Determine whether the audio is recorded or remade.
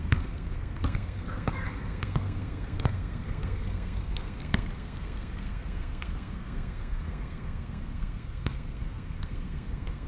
remade